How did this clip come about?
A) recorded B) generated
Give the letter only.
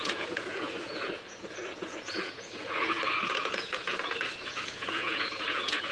B